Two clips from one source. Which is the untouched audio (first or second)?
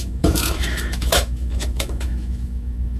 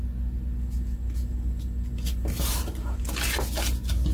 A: second